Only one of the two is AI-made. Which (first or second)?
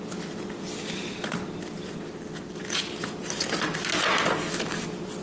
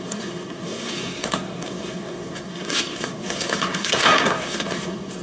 second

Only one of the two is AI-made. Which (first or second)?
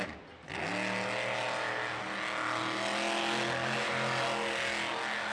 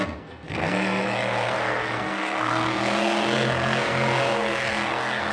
second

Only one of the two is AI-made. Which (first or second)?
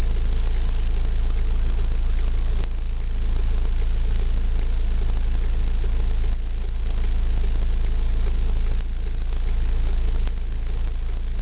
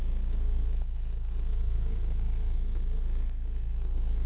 second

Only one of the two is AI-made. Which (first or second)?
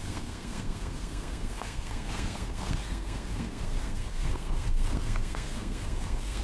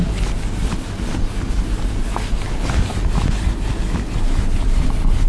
first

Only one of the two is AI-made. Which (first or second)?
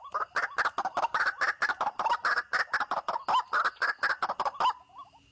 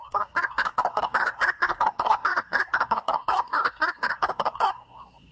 second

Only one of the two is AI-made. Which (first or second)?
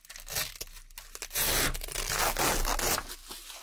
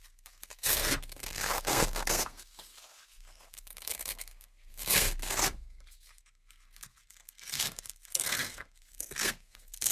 second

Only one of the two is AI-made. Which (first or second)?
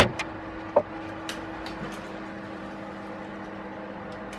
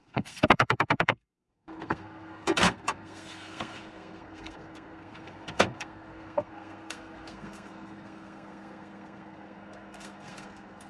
second